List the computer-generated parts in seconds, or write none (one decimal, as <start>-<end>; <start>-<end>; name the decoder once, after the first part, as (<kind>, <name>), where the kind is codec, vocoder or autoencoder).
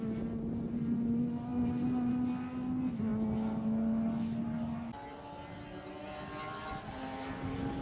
none